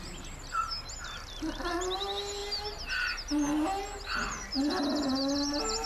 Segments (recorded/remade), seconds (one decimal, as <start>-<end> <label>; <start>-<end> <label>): 0.0-5.9 recorded